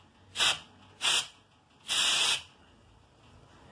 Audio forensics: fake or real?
real